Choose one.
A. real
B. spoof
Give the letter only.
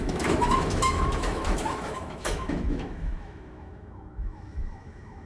B